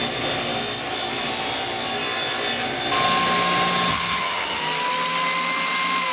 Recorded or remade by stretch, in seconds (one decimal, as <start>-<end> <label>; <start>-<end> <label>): 0.0-3.9 recorded; 3.9-4.6 remade; 4.6-6.1 recorded